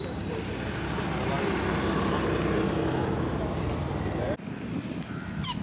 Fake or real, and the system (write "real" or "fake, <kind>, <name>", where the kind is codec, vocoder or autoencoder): real